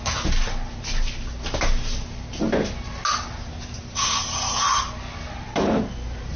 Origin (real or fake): real